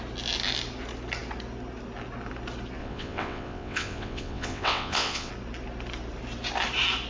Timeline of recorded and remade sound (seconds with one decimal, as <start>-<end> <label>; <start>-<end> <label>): 0.0-2.8 recorded; 2.8-5.3 remade; 5.3-7.1 recorded